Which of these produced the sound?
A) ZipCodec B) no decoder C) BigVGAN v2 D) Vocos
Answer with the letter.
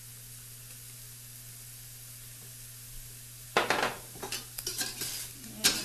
B